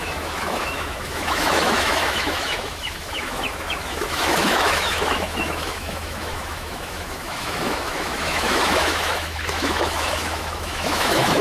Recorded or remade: remade